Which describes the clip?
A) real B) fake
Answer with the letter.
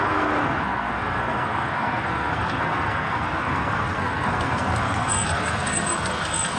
B